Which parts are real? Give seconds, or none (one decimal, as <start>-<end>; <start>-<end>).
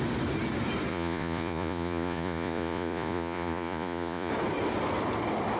0.0-0.9; 4.3-5.6